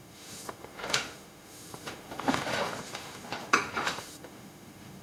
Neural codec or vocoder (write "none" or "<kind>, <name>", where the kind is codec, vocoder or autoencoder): autoencoder, DAC-VAE